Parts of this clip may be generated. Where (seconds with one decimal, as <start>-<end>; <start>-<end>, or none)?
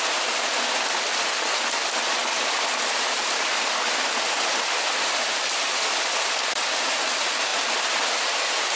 2.2-6.8